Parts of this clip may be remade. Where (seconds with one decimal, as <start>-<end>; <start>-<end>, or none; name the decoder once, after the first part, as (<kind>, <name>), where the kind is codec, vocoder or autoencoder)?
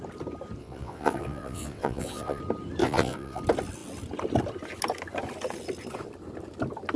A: 0.6-2.4 (vocoder, WaveNeXt); 2.8-3.4